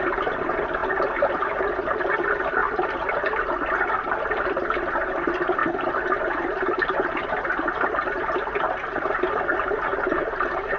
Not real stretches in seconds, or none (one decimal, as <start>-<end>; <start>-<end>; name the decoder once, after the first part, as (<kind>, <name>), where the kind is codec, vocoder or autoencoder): none